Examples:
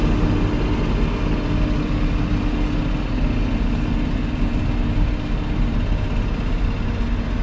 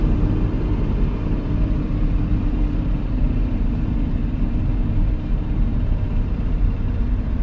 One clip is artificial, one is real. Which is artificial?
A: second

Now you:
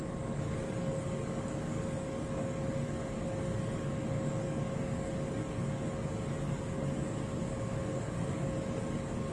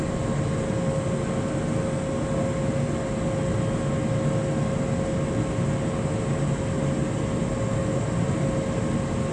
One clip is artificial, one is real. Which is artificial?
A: first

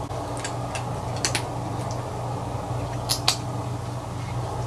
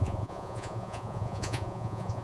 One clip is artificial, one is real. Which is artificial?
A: second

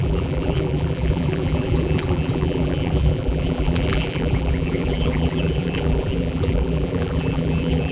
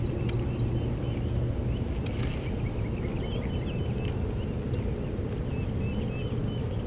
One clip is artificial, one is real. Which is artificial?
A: first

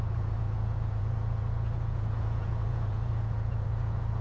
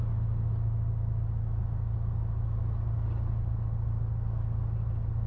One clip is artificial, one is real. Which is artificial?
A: first